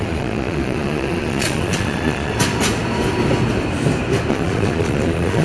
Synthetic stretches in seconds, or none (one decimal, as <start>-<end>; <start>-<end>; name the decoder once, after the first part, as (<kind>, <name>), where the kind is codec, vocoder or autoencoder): 0.0-2.3 (vocoder, Vocos); 4.3-5.4